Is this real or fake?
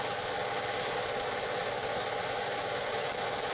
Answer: real